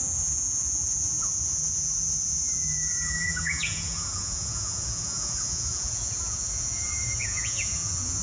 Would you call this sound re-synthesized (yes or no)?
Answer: yes